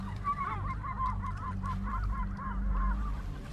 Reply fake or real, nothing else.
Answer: fake